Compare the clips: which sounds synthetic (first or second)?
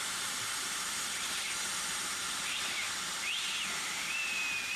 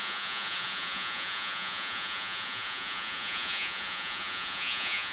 second